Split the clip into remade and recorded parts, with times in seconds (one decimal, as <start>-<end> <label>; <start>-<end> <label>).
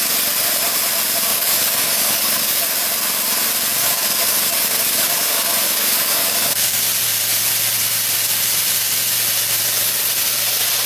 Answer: 0.0-1.3 recorded; 1.3-2.6 remade; 2.6-3.8 recorded; 3.8-6.8 remade; 6.8-10.9 recorded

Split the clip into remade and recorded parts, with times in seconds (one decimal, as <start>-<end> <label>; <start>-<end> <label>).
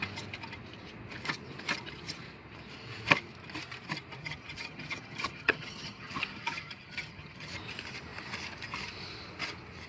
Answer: 0.0-4.2 recorded; 4.2-7.5 remade; 7.5-9.9 recorded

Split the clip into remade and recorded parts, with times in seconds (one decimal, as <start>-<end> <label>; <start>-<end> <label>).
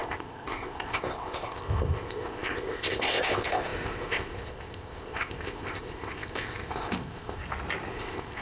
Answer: 0.0-7.4 remade; 7.4-7.9 recorded; 7.9-8.4 remade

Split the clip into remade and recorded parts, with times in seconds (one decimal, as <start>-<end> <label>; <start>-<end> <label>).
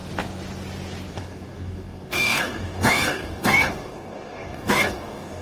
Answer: 0.0-1.1 recorded; 1.1-5.4 remade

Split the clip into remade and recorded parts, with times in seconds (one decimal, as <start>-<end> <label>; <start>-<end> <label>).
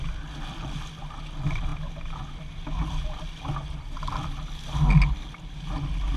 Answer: 0.0-6.2 recorded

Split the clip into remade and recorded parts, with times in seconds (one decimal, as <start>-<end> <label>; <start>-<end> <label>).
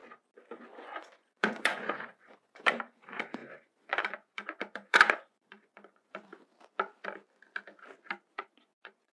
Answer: 0.0-0.6 recorded; 0.6-6.5 remade; 6.5-8.3 recorded; 8.3-9.2 remade